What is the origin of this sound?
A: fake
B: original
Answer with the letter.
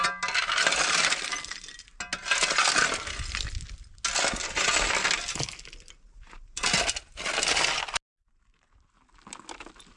B